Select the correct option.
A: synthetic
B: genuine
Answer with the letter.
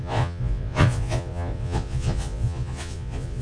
A